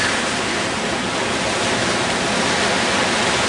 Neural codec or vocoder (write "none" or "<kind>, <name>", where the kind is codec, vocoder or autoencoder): none